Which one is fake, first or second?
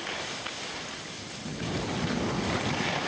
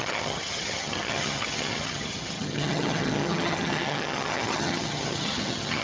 second